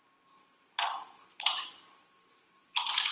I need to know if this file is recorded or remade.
remade